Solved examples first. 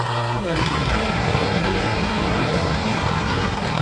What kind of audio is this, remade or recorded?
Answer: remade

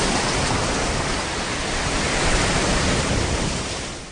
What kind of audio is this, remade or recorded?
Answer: recorded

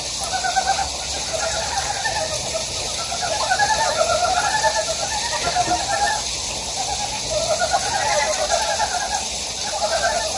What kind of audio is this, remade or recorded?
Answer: recorded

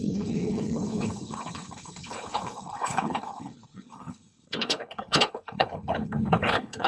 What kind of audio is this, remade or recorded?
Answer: remade